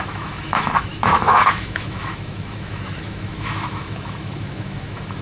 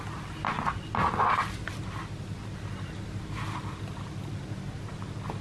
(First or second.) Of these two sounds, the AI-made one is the first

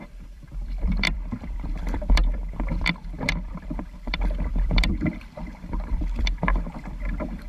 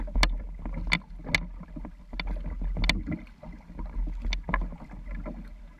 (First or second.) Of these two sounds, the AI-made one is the first